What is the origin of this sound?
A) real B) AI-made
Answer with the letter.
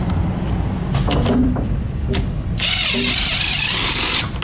A